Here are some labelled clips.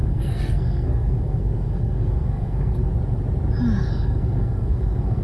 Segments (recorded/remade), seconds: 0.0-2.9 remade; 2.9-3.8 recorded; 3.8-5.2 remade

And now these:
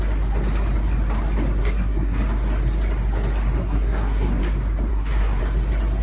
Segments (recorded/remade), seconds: 0.0-1.6 recorded; 1.6-2.2 remade; 2.2-3.6 recorded; 3.6-4.4 remade; 4.4-4.9 recorded; 4.9-5.4 remade; 5.4-6.0 recorded

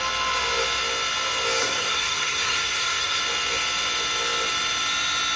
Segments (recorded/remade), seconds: 0.0-1.6 recorded; 1.6-3.2 remade; 3.2-5.4 recorded

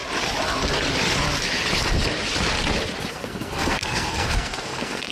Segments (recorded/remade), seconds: 0.0-3.1 recorded; 3.1-5.1 remade

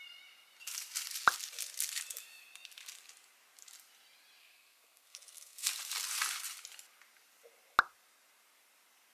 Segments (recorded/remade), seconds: 0.0-4.4 recorded; 4.4-5.7 remade; 5.7-9.1 recorded